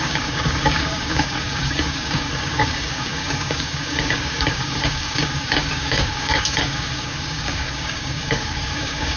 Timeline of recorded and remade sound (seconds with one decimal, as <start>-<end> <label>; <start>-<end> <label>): 0.0-9.2 remade

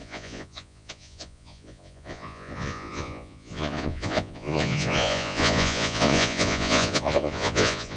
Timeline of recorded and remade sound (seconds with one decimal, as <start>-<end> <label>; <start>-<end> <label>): 0.0-8.0 remade

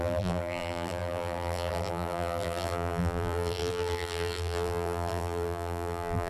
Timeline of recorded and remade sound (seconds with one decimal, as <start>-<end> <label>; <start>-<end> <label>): 0.0-6.3 remade